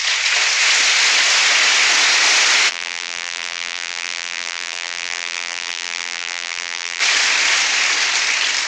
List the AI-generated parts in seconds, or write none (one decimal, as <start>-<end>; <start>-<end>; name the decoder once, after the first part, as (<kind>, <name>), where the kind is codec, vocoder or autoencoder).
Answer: 2.7-7.0 (vocoder, BigVGAN v2)